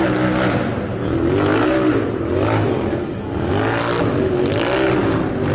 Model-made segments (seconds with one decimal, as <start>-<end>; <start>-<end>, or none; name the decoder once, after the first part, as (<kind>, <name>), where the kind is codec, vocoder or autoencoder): none